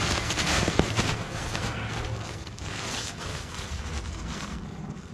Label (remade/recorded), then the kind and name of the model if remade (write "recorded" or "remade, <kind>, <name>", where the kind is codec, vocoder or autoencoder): remade, codec, SNAC